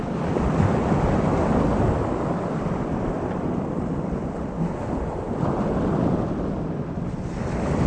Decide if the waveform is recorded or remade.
recorded